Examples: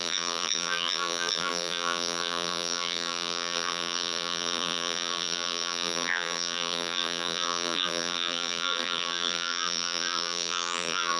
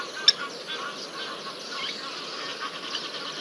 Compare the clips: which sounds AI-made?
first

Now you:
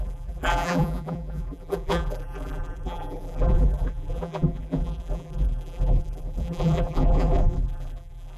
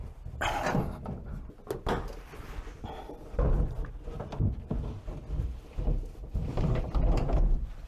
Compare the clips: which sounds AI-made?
first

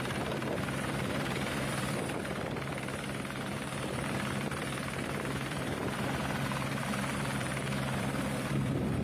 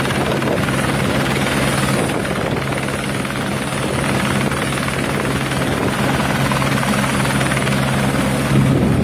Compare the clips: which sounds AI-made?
first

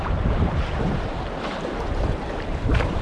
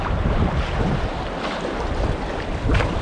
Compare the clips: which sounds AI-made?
first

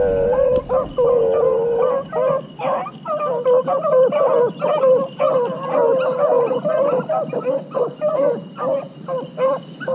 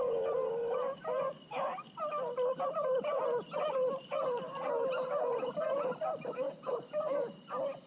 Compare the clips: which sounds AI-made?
second